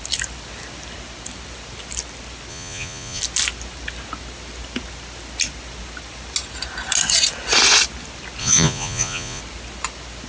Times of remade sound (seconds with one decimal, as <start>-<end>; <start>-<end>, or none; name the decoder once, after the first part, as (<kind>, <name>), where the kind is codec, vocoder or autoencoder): 2.5-3.2 (vocoder, Vocos); 8.4-9.4